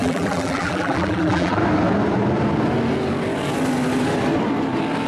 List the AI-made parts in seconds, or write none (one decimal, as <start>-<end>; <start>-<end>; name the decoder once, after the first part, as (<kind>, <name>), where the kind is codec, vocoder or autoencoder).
0.0-1.6 (vocoder, BigVGAN v2)